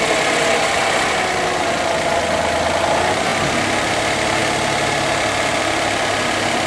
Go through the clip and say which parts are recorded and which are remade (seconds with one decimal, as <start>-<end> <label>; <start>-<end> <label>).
0.0-6.7 recorded